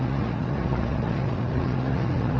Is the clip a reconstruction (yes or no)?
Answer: yes